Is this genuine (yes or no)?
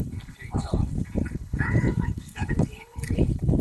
no